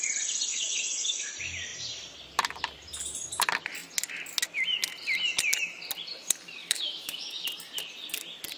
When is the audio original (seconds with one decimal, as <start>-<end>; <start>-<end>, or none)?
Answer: 0.0-0.5; 1.2-6.6; 7.5-8.6